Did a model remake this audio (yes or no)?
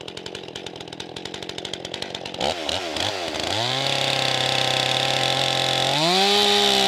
no